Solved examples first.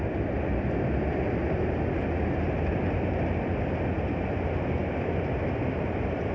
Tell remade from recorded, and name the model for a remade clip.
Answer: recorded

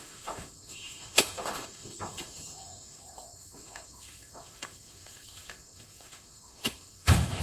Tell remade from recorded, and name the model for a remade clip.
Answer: remade, autoencoder, DAC-VAE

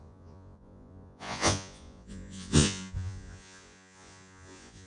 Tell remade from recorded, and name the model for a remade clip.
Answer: remade, vocoder, Vocos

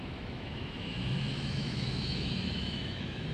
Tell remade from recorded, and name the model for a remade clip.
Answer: remade, autoencoder, DAC-VAE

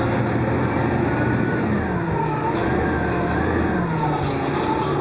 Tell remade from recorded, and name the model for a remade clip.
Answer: recorded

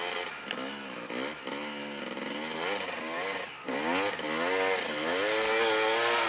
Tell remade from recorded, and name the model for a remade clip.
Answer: recorded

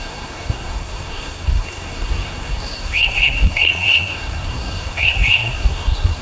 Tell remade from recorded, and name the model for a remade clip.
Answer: remade, codec, SNAC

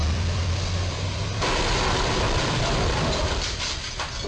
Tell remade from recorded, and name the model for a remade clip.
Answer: remade, vocoder, BigVGAN v2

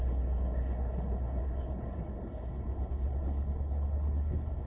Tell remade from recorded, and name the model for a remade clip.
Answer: remade, codec, HILCodec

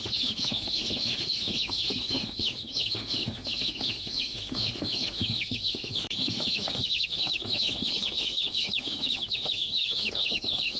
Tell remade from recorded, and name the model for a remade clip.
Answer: remade, autoencoder, DAC-VAE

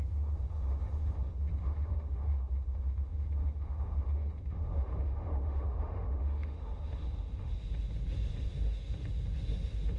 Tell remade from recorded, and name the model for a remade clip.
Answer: remade, autoencoder, DAC-VAE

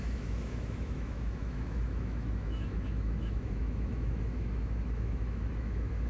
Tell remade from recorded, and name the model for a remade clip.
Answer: remade, autoencoder, DAC-VAE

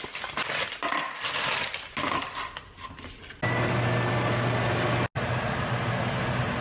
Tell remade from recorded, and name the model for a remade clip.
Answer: recorded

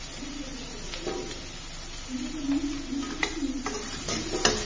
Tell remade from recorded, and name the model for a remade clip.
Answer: recorded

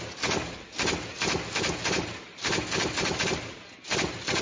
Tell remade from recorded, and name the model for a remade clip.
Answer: recorded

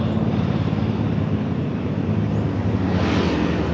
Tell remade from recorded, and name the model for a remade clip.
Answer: recorded